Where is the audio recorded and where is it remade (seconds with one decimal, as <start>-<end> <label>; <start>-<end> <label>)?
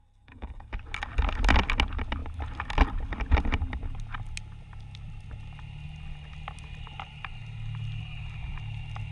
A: 0.0-0.7 remade; 0.7-9.1 recorded